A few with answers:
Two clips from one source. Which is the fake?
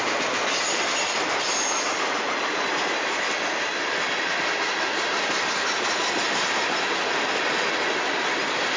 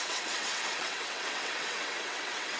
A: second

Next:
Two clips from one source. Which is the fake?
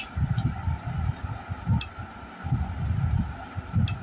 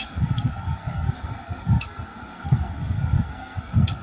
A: second